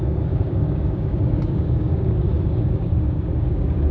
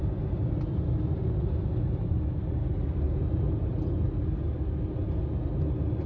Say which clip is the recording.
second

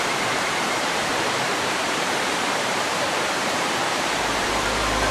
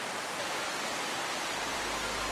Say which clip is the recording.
second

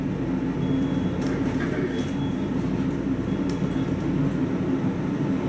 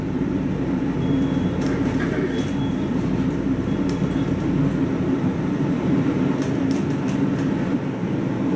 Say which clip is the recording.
first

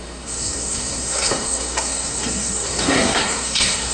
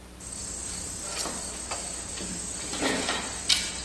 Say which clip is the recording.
second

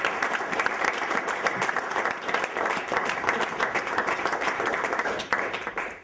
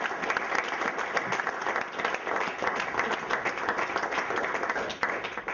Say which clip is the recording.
second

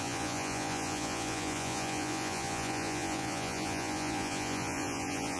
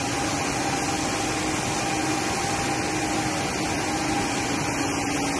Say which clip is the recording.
second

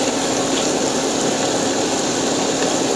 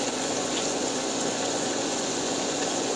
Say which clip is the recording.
first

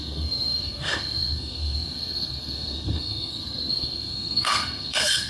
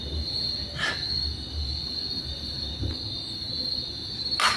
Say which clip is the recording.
second